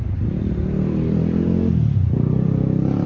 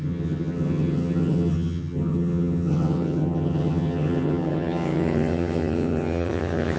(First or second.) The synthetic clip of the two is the second